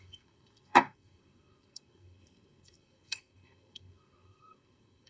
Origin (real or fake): fake